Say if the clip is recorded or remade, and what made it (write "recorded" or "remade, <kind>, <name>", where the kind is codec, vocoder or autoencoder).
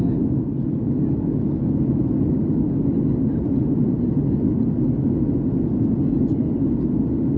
recorded